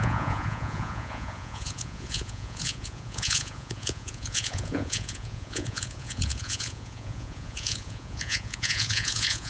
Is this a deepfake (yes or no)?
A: yes